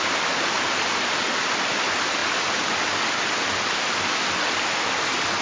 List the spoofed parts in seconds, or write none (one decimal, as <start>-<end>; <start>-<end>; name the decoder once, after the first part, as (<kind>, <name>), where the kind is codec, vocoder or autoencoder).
none

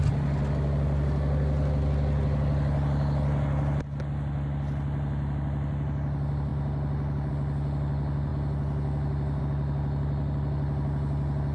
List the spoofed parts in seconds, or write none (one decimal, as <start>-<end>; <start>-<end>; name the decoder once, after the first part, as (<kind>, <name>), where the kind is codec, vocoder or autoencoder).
none

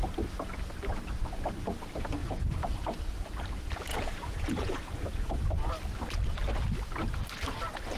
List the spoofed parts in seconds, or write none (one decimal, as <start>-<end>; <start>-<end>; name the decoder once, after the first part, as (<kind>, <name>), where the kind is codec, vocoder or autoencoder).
2.2-2.8 (vocoder, Vocos); 3.9-5.4

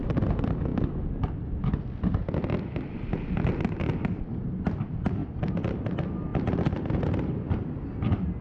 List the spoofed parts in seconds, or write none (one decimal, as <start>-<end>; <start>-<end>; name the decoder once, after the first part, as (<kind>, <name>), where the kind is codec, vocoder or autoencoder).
5.2-5.8 (vocoder, BigVGAN v2)